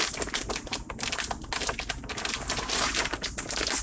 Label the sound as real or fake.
real